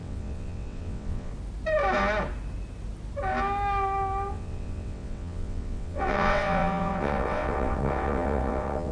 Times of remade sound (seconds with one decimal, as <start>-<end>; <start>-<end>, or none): 0.0-1.3; 4.3-8.9